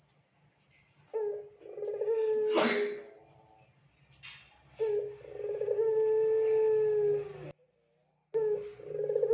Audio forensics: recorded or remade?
recorded